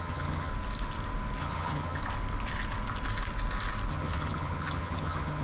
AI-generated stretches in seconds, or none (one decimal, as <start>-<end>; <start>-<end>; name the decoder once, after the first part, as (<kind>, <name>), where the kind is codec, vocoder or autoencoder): 0.0-0.5 (vocoder, HiFi-GAN); 1.4-2.0; 3.9-5.4